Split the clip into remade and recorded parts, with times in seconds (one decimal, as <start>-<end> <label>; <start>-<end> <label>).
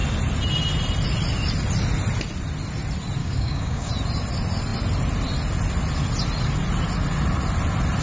0.0-3.2 recorded; 3.2-3.9 remade; 3.9-8.0 recorded